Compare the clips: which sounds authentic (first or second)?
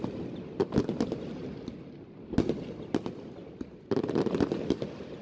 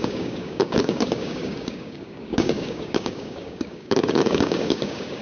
first